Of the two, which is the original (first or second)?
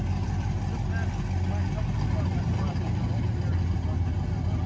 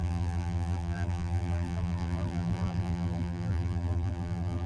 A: first